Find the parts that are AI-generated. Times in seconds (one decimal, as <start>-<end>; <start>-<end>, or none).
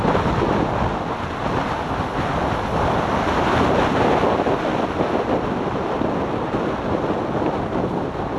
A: none